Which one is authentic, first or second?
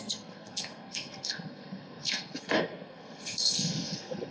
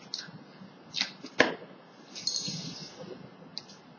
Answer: second